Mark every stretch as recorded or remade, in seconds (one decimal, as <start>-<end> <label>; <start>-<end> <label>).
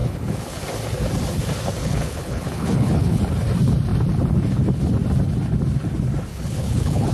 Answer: 0.0-0.6 remade; 0.6-1.8 recorded; 1.8-3.2 remade; 3.2-6.3 recorded; 6.3-7.1 remade